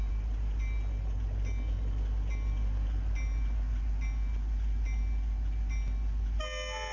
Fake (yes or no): no